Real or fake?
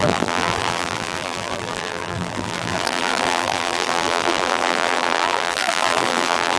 fake